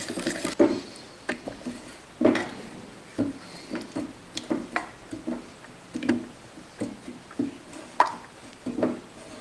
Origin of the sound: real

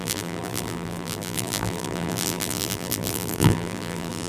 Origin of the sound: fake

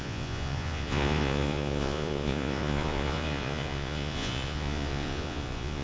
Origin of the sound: fake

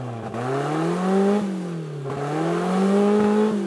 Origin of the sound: real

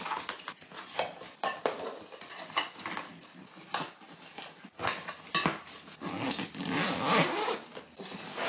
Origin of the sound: real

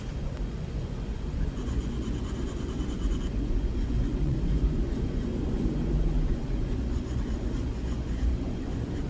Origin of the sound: fake